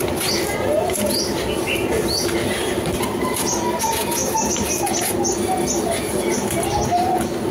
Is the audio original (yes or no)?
yes